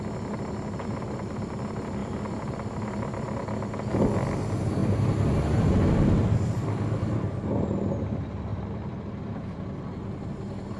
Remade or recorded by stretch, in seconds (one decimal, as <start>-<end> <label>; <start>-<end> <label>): 0.0-10.8 recorded